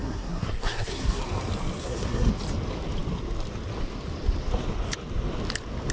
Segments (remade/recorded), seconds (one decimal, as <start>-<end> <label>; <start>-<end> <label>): 0.0-1.2 remade; 1.2-1.8 recorded; 1.8-2.3 remade; 2.3-5.9 recorded